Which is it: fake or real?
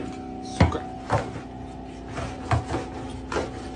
real